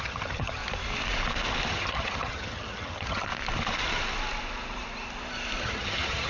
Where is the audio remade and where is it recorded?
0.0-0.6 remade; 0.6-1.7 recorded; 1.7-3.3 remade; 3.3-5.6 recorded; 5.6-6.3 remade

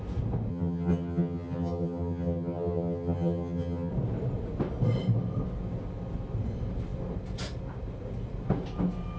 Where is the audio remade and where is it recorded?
0.0-0.5 recorded; 0.5-3.9 remade; 3.9-9.2 recorded

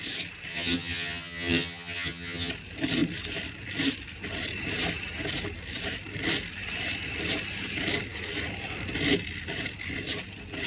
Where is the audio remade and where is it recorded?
0.0-0.5 recorded; 0.5-2.5 remade; 2.5-10.7 recorded

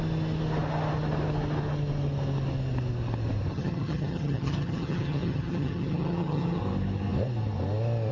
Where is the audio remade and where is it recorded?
0.0-3.5 recorded; 3.5-6.6 remade; 6.6-8.1 recorded

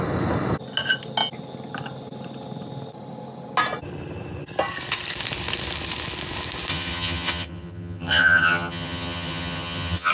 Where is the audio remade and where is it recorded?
0.0-6.7 recorded; 6.7-10.1 remade

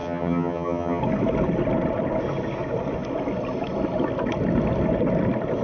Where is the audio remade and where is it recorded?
0.0-1.0 remade; 1.0-5.6 recorded

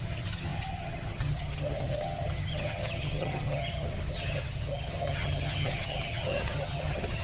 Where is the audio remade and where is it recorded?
0.0-7.2 remade

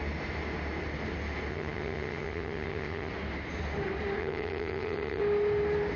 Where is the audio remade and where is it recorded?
0.0-1.5 recorded; 1.5-3.1 remade; 3.1-4.2 recorded; 4.2-5.2 remade; 5.2-6.0 recorded